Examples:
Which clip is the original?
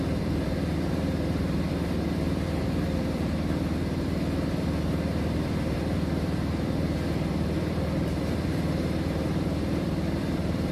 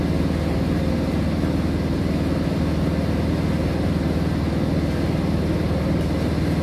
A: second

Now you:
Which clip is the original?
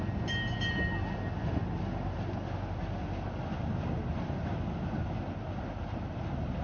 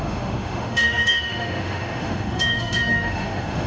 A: first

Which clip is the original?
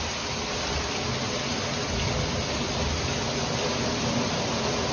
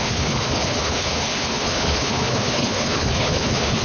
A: first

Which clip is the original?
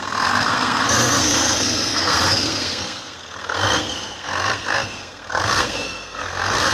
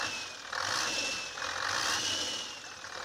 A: second